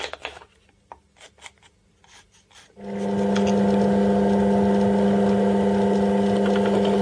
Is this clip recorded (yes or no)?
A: yes